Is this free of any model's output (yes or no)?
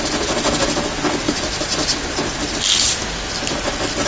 yes